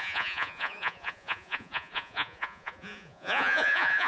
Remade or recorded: remade